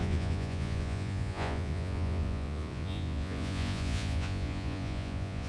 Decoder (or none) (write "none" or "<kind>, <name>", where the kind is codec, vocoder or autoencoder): vocoder, Vocos